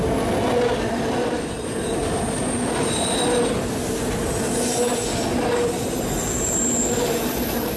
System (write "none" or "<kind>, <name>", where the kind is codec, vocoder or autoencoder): none